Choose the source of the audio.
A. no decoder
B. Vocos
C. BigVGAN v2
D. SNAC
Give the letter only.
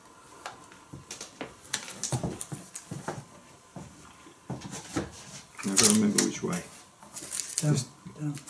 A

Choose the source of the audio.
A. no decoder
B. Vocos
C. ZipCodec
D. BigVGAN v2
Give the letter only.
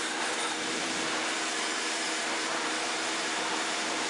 D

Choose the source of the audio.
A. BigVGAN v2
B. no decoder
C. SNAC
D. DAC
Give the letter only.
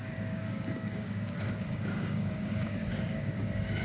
D